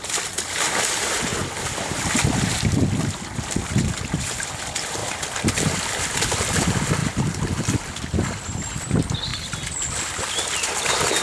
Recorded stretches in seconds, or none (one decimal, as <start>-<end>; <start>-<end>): 1.3-3.0; 5.0-5.5; 9.3-9.9